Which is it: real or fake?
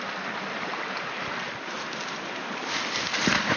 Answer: real